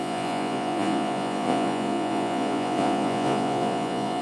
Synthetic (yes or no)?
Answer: yes